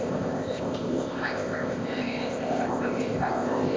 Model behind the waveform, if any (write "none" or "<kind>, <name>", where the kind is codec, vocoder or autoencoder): codec, ZipCodec